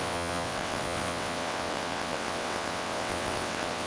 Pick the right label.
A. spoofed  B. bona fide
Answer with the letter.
A